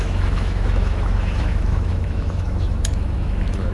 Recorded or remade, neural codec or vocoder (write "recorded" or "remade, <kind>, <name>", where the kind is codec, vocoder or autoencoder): remade, autoencoder, DAC-VAE